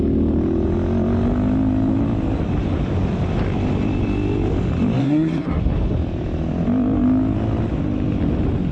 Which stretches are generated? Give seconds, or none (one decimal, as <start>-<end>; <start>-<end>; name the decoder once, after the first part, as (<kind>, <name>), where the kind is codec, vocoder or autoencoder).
5.0-5.7 (codec, SNAC)